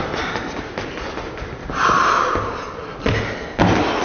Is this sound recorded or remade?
recorded